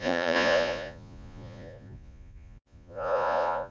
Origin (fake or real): fake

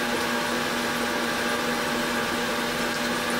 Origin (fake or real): real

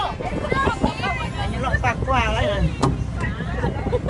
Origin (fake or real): fake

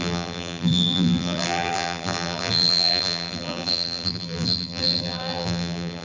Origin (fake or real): fake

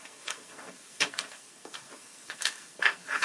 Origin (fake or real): fake